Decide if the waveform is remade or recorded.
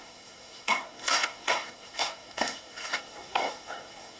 remade